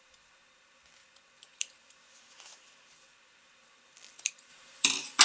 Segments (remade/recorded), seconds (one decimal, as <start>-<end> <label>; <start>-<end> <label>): 0.0-4.5 recorded; 4.5-5.2 remade